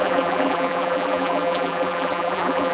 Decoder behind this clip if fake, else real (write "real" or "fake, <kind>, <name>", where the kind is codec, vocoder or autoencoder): fake, vocoder, BigVGAN v2